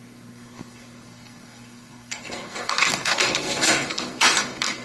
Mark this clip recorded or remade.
remade